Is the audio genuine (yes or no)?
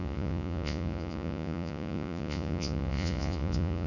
no